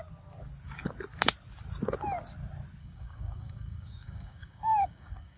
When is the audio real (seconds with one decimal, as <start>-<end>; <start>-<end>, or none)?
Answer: 0.0-2.8